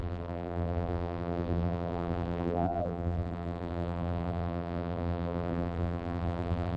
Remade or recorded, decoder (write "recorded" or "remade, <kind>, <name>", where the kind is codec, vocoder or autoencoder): remade, vocoder, BigVGAN v2